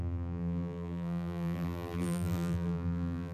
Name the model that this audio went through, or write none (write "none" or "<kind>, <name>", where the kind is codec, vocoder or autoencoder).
vocoder, BigVGAN v2